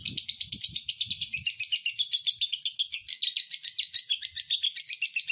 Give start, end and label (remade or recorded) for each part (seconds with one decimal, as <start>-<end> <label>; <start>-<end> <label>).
0.0-5.3 recorded